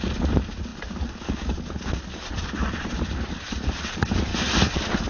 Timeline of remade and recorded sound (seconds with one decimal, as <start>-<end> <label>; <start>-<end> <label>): 0.0-5.1 recorded